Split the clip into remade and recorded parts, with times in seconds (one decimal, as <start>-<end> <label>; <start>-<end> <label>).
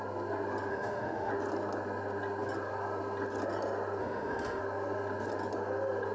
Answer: 0.0-0.7 recorded; 0.7-1.3 remade; 1.3-4.0 recorded; 4.0-4.6 remade; 4.6-6.1 recorded